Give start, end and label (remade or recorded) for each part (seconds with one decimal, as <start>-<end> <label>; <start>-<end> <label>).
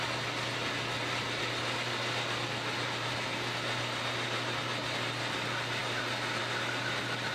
0.0-7.3 recorded